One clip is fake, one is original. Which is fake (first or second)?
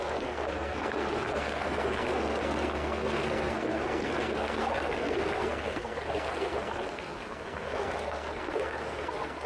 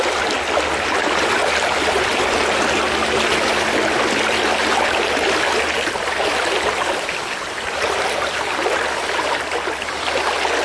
first